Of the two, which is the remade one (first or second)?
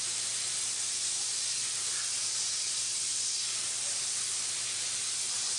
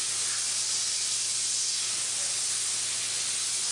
first